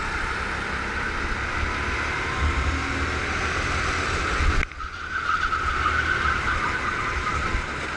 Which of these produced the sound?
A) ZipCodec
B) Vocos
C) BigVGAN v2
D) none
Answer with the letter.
D